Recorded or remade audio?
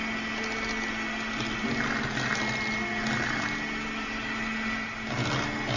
recorded